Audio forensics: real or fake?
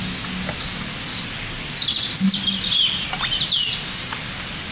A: real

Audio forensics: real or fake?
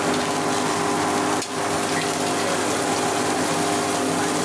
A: real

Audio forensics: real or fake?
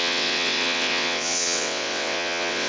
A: fake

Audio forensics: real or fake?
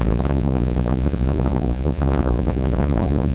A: fake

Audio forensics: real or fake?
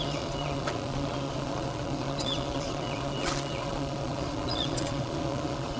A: fake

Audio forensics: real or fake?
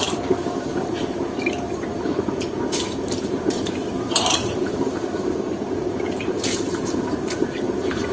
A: fake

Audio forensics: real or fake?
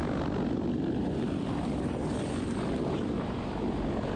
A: real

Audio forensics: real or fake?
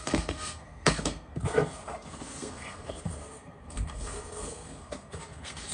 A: fake